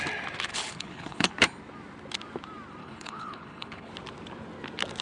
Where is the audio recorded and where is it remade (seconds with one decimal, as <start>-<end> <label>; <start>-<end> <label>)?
0.0-0.5 recorded; 0.5-1.3 remade; 1.3-2.8 recorded; 2.8-3.9 remade; 3.9-5.0 recorded